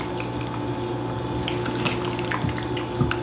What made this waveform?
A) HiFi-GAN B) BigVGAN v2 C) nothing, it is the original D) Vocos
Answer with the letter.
C